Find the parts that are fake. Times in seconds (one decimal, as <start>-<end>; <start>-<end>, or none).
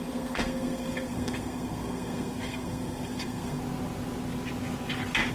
0.0-3.6